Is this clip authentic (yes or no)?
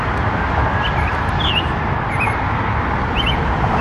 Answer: no